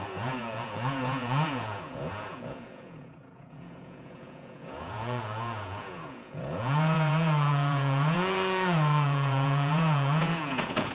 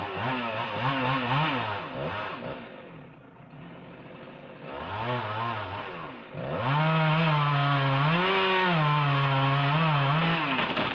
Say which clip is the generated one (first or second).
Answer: first